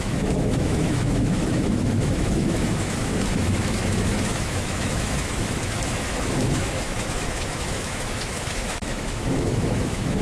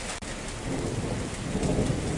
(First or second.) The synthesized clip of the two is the first